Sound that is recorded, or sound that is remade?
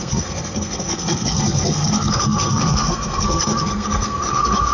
remade